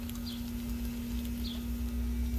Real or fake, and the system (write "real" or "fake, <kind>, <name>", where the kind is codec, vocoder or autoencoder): real